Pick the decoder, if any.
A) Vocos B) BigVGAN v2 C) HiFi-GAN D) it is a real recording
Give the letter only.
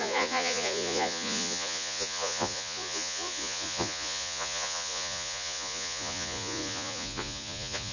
A